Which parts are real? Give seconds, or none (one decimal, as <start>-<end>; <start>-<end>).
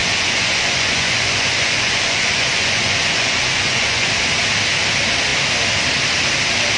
4.1-6.8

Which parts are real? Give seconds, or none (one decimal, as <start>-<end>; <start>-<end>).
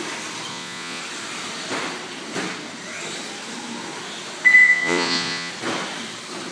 0.0-0.5; 1.0-4.6; 5.5-6.5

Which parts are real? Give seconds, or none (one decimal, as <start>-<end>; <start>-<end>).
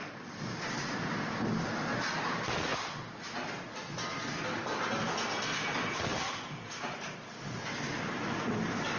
0.0-9.0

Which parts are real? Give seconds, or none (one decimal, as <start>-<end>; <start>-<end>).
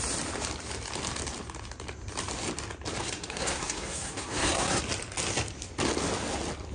0.0-3.0; 4.8-6.7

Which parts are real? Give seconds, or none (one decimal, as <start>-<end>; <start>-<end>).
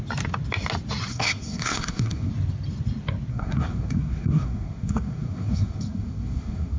0.0-1.1; 2.3-3.3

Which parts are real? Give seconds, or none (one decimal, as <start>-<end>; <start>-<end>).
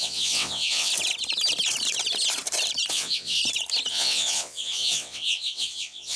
0.9-2.9; 3.4-3.9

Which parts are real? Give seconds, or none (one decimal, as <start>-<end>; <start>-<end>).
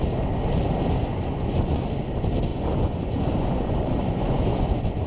0.0-1.0; 1.8-2.5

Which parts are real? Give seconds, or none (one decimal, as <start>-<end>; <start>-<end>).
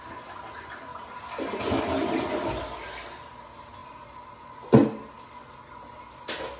0.0-0.9; 1.8-6.6